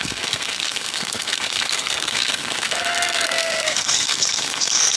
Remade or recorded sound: remade